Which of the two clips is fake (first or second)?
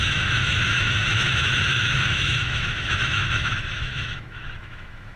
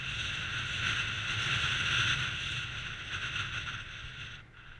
first